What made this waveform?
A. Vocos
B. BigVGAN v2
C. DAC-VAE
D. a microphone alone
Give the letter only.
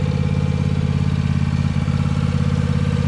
D